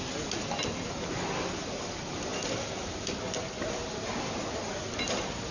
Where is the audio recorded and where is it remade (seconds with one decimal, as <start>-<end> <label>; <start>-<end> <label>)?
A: 0.0-2.3 recorded; 2.3-3.2 remade; 3.2-5.5 recorded